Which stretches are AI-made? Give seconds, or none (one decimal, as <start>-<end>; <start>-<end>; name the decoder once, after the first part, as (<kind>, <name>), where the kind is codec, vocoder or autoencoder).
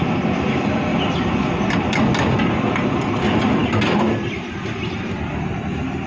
none